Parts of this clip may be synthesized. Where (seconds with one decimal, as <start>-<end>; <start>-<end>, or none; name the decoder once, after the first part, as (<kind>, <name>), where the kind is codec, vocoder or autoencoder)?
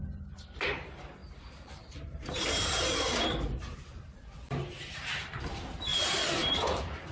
1.2-4.5 (vocoder, BigVGAN v2); 5.9-7.1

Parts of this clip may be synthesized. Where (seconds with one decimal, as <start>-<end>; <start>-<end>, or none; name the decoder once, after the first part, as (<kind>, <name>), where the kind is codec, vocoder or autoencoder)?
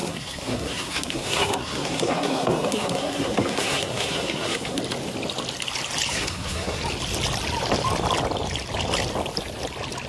0.0-4.8 (codec, SNAC); 6.1-6.8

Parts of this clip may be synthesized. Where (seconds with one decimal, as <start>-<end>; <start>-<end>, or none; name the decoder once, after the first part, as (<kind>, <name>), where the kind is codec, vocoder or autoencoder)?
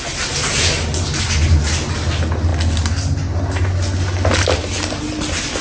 none